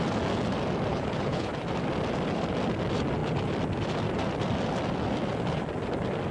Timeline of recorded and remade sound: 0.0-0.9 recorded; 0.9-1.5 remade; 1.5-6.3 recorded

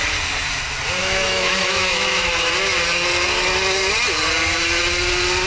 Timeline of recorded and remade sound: 0.0-1.0 recorded; 1.0-2.5 remade; 2.5-5.5 recorded

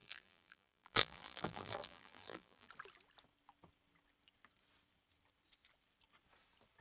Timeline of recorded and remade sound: 0.0-2.7 remade; 2.7-6.8 recorded

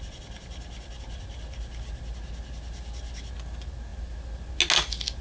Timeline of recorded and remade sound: 0.0-5.2 recorded